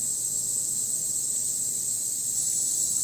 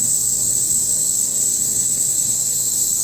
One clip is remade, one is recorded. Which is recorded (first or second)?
first